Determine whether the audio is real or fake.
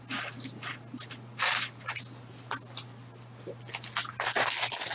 real